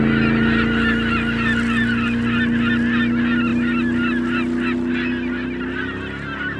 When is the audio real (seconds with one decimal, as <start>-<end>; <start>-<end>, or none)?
0.0-6.6